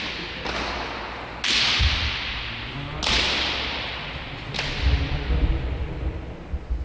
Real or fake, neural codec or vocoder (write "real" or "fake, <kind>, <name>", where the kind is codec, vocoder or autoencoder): real